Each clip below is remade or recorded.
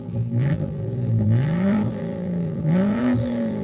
remade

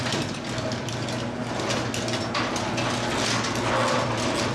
recorded